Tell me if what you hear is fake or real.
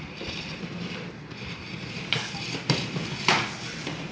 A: real